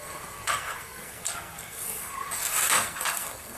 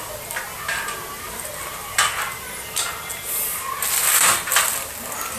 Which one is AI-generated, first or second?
first